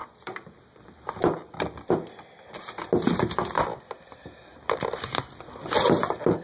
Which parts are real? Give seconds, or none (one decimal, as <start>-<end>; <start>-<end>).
2.6-4.5; 5.8-6.4